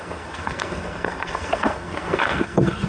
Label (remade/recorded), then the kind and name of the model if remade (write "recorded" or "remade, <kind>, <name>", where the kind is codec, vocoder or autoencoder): remade, codec, SNAC